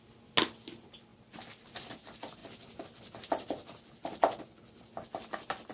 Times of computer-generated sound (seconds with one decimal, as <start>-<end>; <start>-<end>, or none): none